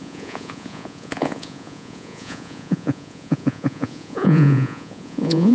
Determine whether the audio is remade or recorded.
remade